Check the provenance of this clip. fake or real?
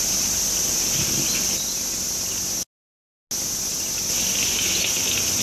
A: real